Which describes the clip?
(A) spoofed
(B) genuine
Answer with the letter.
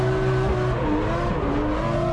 B